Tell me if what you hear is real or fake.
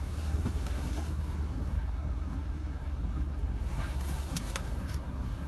fake